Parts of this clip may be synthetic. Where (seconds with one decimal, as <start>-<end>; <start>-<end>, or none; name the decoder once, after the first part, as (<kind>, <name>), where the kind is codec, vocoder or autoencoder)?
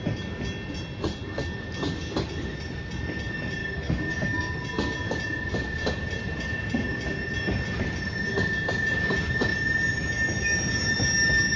3.6-4.5 (codec, DAC)